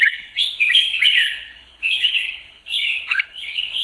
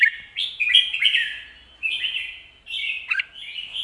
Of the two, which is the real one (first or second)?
second